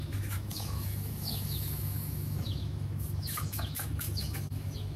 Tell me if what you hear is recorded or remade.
remade